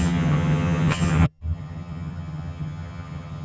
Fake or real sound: fake